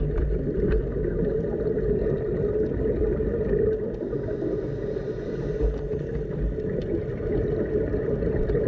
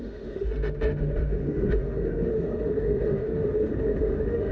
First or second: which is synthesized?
second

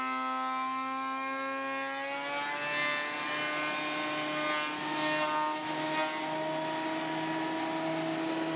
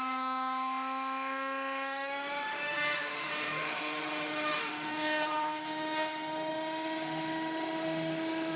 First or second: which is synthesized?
second